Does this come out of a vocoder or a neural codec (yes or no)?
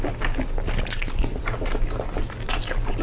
no